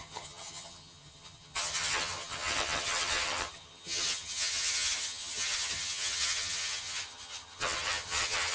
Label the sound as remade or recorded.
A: remade